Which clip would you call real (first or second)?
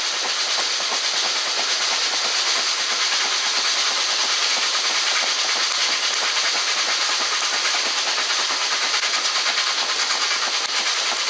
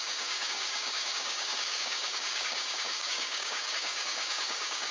first